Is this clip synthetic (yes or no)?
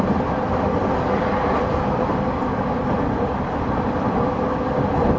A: no